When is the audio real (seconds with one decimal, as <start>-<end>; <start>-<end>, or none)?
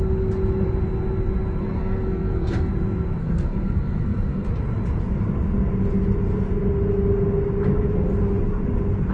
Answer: 0.0-1.6; 2.7-3.2; 4.5-9.1